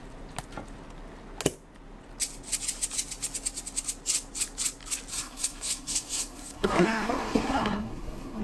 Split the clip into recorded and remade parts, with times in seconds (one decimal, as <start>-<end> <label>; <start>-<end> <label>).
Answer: 0.0-5.1 recorded; 5.1-8.4 remade

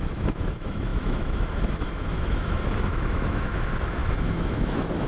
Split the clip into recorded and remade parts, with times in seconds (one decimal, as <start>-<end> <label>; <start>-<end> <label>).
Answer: 0.0-5.1 remade

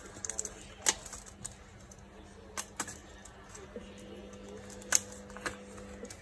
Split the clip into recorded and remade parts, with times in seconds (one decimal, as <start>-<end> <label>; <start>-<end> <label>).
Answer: 0.0-6.2 recorded